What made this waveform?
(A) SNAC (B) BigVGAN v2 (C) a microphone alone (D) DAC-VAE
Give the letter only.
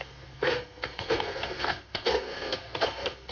A